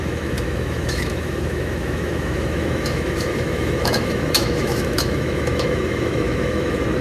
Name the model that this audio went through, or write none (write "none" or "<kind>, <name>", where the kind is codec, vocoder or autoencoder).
autoencoder, DAC-VAE